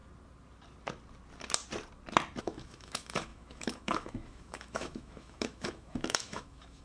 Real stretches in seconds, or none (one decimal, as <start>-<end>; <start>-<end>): 0.0-2.4